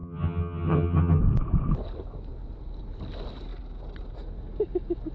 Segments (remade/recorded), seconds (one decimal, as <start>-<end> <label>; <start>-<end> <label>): 0.0-1.2 remade; 1.2-5.1 recorded